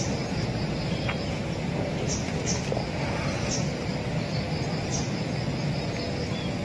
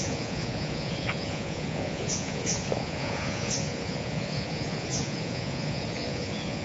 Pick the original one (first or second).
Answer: first